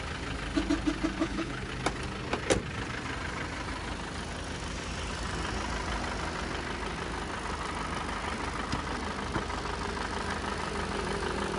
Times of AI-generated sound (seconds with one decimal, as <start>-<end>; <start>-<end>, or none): 1.2-1.7